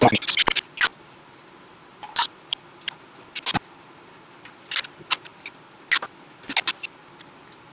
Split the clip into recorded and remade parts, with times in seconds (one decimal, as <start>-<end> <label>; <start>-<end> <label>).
0.0-7.7 recorded